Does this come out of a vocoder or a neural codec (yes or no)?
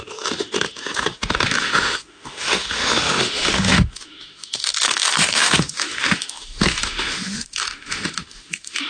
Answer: yes